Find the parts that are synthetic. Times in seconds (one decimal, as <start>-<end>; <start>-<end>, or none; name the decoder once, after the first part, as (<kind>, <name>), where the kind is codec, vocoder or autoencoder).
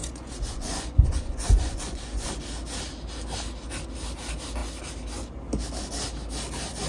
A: 0.0-2.3 (vocoder, Vocos)